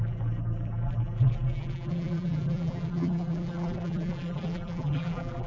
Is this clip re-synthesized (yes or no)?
yes